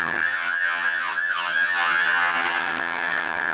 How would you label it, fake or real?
fake